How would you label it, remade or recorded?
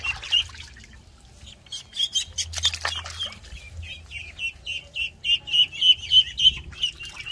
recorded